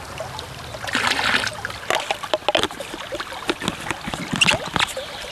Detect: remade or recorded recorded